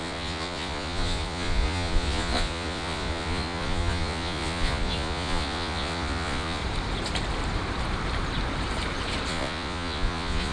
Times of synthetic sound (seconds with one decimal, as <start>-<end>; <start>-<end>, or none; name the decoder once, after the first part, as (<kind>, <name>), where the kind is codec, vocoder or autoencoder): 0.0-6.6 (vocoder, Vocos); 9.3-10.5